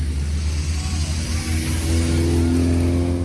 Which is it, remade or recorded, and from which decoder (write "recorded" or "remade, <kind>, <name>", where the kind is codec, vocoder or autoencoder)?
recorded